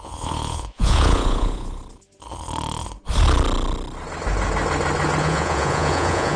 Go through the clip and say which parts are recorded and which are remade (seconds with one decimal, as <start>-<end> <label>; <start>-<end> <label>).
0.0-1.8 remade; 1.8-5.2 recorded; 5.2-6.4 remade